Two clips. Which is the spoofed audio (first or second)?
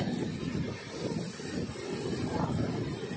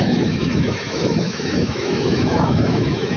second